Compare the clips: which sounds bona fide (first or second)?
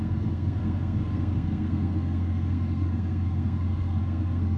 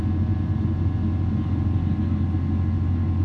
second